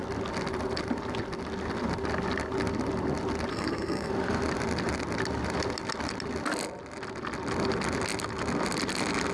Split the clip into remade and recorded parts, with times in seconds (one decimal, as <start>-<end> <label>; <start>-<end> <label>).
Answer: 0.0-3.5 recorded; 3.5-4.1 remade; 4.1-9.3 recorded